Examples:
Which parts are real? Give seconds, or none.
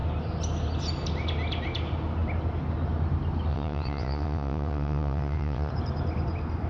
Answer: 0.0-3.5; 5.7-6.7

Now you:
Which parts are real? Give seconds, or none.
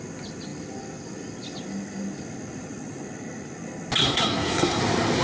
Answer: 0.0-4.0; 4.8-5.2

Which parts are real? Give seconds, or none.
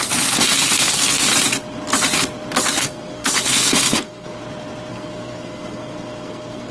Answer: 1.3-2.8; 4.4-4.9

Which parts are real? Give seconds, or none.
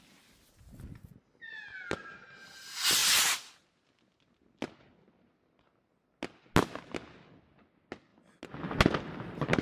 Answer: 0.0-9.6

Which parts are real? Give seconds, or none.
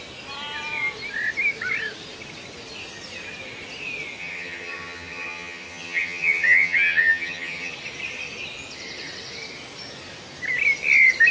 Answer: 0.0-4.2; 7.7-11.3